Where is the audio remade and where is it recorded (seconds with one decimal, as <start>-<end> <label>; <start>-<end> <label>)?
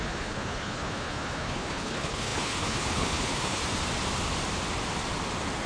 0.0-3.6 remade; 3.6-5.7 recorded